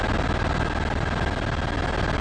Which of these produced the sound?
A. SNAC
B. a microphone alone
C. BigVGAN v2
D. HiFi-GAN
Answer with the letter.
B